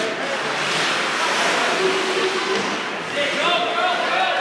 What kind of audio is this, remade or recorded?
recorded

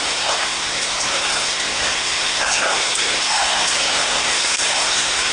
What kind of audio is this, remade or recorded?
remade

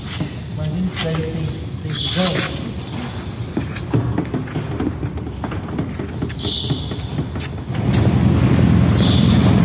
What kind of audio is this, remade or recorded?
recorded